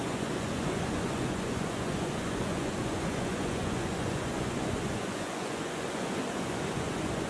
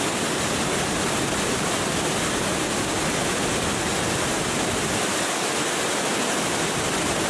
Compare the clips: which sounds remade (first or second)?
first